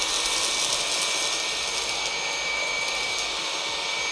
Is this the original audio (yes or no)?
yes